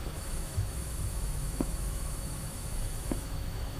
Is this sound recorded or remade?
remade